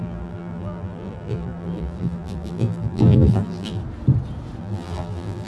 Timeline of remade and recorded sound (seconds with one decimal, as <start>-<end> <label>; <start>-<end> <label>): 0.0-3.8 remade; 3.8-4.6 recorded; 4.6-5.5 remade